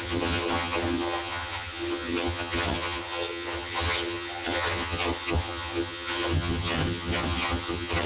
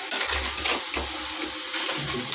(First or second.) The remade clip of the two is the first